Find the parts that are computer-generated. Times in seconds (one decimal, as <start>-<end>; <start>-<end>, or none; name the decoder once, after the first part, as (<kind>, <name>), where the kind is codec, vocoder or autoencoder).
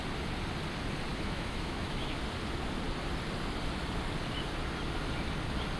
1.1-2.1 (autoencoder, DAC-VAE)